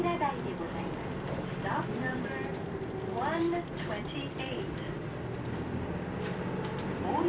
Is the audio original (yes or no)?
yes